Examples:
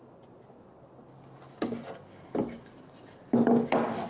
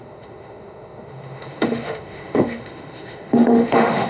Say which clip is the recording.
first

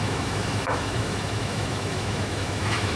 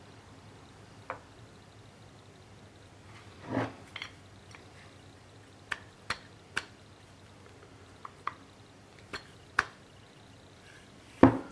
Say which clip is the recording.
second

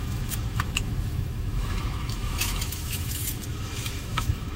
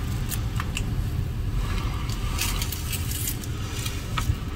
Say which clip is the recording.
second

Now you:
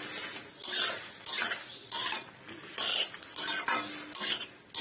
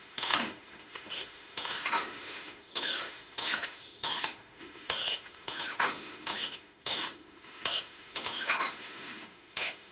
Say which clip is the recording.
first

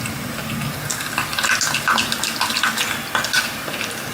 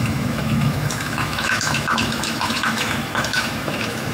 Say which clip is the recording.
first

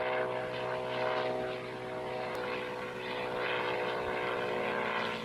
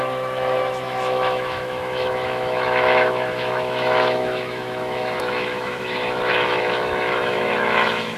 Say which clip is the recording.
first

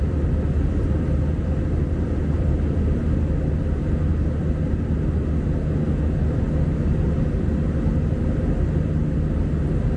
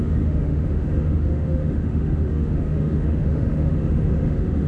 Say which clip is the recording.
first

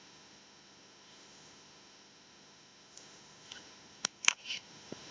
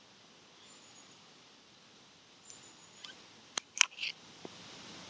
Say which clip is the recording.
second